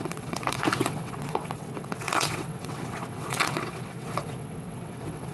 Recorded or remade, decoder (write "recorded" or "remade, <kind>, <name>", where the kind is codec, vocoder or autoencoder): remade, vocoder, WaveNeXt